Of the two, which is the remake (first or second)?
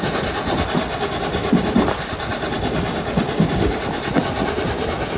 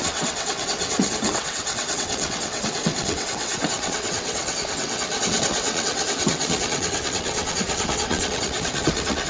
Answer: second